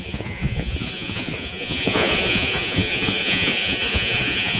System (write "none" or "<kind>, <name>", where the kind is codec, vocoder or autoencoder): vocoder, Vocos